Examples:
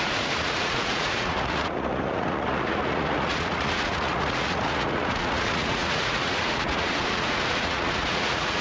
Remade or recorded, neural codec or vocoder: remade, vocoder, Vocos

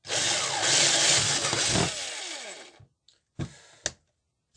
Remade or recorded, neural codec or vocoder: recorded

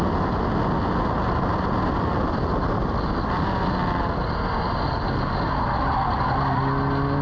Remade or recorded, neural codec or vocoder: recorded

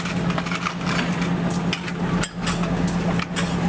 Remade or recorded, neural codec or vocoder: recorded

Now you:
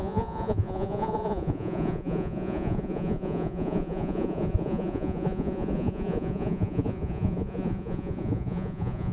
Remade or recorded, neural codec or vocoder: remade, vocoder, Vocos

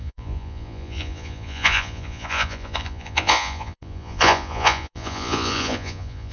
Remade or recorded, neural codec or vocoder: remade, vocoder, Vocos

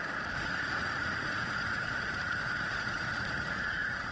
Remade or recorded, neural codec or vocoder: remade, vocoder, Vocos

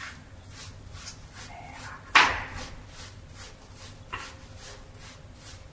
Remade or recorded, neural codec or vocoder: recorded